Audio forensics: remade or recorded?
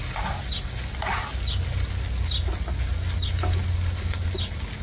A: recorded